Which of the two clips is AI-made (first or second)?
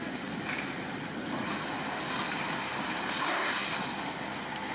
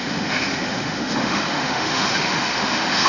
second